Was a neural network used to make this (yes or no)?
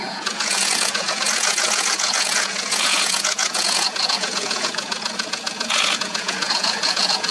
yes